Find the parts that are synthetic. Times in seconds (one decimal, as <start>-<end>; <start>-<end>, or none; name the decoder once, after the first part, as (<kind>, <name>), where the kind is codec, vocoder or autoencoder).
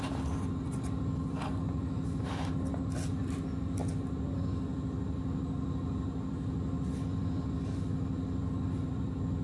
none